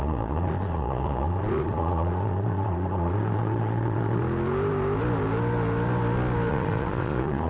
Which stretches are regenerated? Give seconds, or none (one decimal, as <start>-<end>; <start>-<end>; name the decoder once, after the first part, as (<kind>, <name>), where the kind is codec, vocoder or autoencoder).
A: 0.0-4.2 (vocoder, Vocos); 6.5-7.5